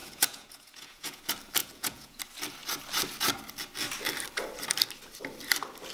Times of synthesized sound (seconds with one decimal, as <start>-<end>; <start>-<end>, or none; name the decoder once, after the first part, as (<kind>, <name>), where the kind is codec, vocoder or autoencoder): 0.0-1.2 (vocoder, Vocos); 1.6-2.2